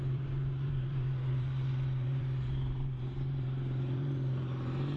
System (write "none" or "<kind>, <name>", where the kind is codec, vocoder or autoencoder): vocoder, BigVGAN v2